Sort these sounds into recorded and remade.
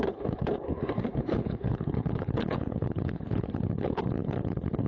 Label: remade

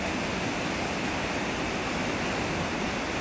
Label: recorded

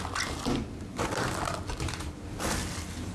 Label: recorded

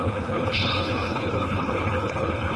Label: remade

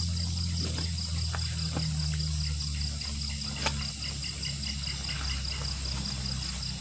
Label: recorded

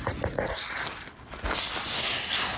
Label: recorded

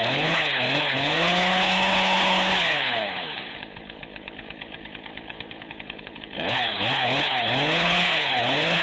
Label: remade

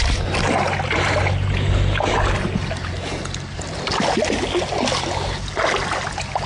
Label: recorded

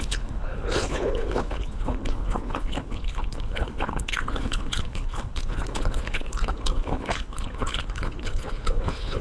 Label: remade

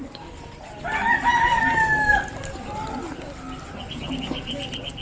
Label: recorded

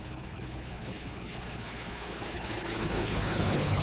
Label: remade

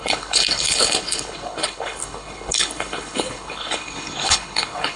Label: remade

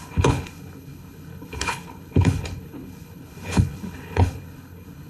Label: remade